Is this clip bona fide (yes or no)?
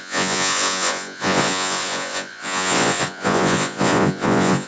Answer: no